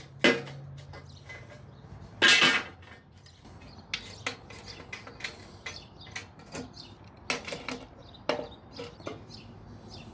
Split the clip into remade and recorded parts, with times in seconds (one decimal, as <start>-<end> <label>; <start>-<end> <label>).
0.0-10.1 recorded